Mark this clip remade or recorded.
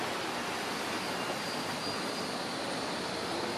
recorded